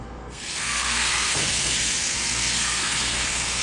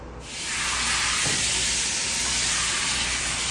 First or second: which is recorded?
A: second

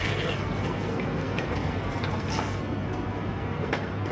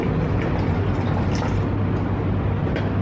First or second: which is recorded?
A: second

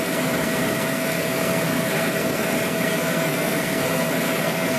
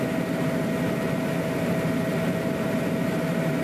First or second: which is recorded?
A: second